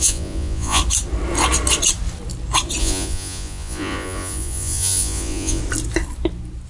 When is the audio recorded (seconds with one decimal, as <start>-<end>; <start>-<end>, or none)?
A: 0.8-2.8; 5.6-6.7